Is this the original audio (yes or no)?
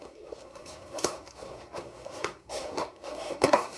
no